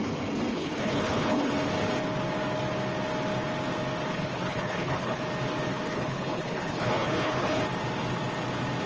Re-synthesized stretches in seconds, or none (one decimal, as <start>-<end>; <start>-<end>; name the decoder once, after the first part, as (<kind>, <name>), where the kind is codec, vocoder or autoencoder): 0.5-1.5 (codec, HILCodec); 4.1-5.2; 5.9-7.6